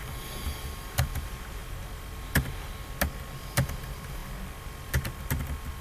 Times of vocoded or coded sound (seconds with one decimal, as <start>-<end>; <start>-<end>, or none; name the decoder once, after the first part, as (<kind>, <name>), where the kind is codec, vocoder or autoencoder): none